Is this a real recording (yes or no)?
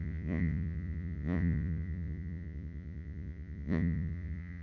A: no